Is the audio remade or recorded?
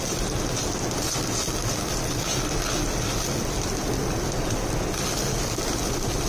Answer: recorded